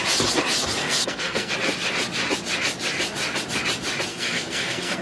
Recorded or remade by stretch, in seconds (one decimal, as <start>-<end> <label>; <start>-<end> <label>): 0.0-0.8 recorded; 0.8-1.5 remade; 1.5-4.1 recorded; 4.1-5.0 remade